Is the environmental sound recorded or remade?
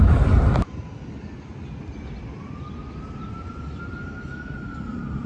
recorded